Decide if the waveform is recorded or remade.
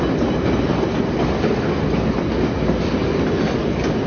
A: recorded